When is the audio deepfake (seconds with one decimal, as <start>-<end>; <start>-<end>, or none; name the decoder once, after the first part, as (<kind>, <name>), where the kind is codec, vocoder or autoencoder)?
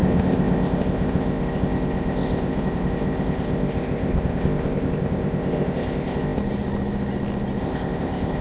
0.0-6.4 (codec, ZipCodec); 7.6-8.4